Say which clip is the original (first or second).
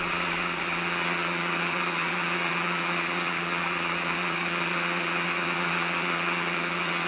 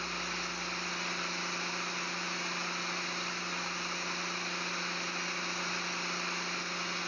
second